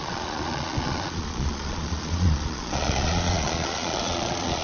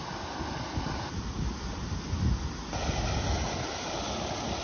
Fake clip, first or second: first